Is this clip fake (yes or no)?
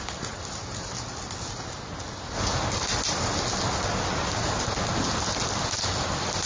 no